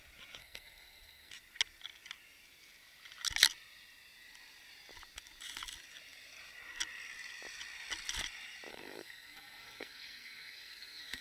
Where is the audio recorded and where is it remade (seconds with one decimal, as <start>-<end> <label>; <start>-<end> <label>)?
0.0-0.4 recorded; 0.4-1.3 remade; 1.3-8.7 recorded; 8.7-11.2 remade